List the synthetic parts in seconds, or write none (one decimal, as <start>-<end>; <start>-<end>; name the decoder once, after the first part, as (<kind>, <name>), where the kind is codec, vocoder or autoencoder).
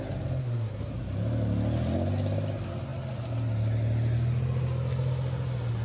0.4-0.9 (codec, SNAC)